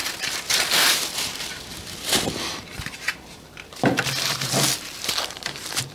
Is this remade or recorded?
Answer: remade